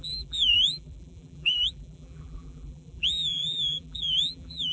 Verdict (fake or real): fake